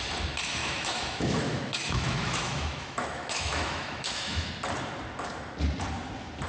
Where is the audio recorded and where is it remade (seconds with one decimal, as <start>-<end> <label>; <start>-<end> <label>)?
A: 0.0-0.6 recorded; 0.6-4.5 remade; 4.5-6.5 recorded